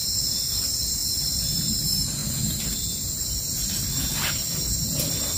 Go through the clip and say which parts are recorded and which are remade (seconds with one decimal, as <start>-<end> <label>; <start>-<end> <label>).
0.0-0.5 recorded; 0.5-1.0 remade; 1.0-1.7 recorded; 1.7-2.2 remade; 2.2-5.4 recorded